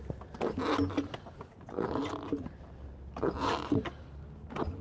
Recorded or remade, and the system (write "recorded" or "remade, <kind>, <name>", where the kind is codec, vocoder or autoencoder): recorded